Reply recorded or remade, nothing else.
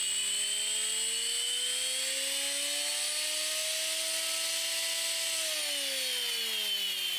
recorded